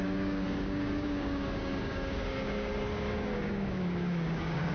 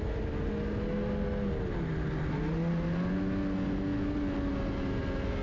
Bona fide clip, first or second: second